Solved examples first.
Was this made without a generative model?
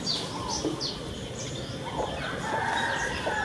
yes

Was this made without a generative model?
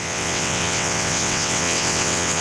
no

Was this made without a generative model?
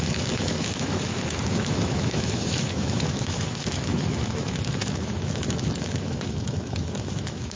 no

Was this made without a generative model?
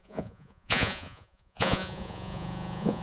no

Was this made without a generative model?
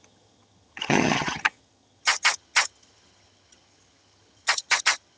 no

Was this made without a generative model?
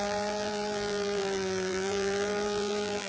no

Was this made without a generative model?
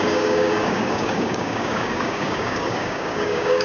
no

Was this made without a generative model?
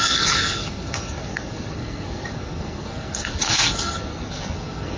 no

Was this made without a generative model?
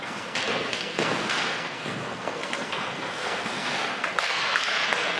no